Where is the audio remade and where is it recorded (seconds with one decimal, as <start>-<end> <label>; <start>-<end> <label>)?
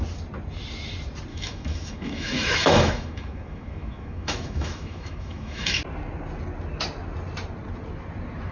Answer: 0.0-1.3 recorded; 1.3-5.8 remade; 5.8-8.5 recorded